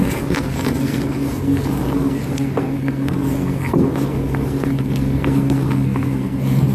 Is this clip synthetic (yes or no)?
yes